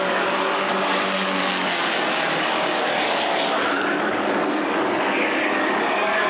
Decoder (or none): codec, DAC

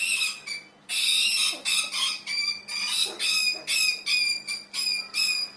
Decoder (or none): none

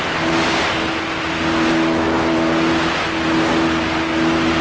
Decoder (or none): none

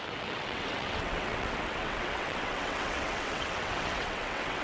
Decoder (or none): vocoder, WaveNeXt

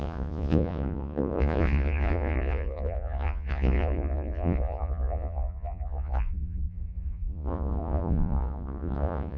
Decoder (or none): vocoder, Vocos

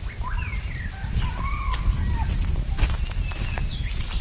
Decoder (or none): none